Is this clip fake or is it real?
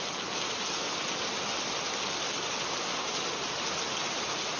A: real